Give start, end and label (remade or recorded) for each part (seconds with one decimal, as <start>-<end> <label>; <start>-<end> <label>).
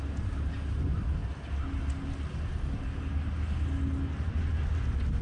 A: 0.0-5.2 recorded